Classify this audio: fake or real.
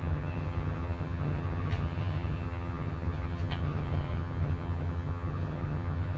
fake